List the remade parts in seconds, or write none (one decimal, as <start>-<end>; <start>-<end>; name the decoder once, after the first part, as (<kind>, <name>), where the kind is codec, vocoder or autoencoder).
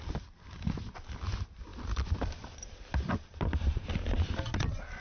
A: none